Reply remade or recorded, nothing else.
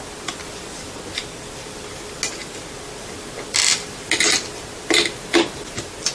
recorded